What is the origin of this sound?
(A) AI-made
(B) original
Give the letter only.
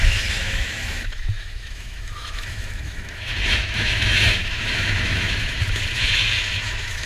A